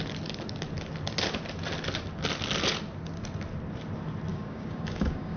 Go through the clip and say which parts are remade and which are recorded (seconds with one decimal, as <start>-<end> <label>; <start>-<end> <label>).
0.0-4.3 recorded; 4.3-5.4 remade